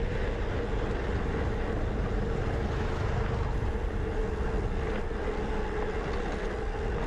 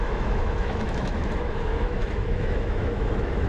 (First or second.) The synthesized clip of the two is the second